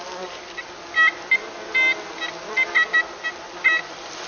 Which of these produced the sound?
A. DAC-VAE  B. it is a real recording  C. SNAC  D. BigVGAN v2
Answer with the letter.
B